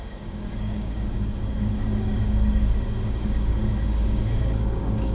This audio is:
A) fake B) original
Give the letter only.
A